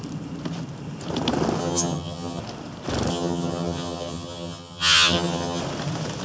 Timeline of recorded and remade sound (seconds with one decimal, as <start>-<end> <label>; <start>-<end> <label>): 0.0-1.6 recorded; 1.6-2.4 remade; 2.4-3.1 recorded; 3.1-5.6 remade; 5.6-6.2 recorded